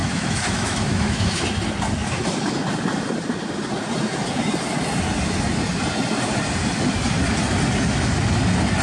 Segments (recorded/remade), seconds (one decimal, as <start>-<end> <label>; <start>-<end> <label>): 0.0-1.4 remade; 1.4-8.8 recorded